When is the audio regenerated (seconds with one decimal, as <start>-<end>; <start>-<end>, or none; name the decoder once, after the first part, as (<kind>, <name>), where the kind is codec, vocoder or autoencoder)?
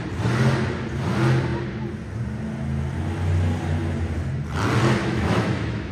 5.0-5.9 (autoencoder, DAC-VAE)